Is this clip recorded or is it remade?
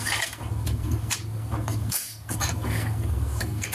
remade